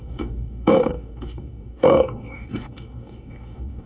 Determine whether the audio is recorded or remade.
remade